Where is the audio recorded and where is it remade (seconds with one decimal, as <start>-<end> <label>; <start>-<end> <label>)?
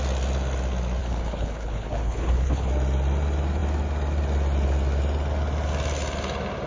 0.0-1.0 recorded; 1.0-2.7 remade; 2.7-6.7 recorded